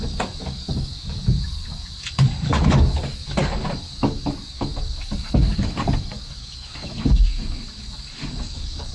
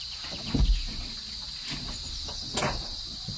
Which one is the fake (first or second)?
first